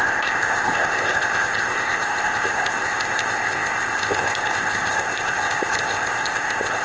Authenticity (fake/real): fake